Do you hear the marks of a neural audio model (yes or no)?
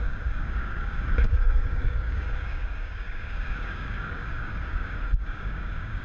yes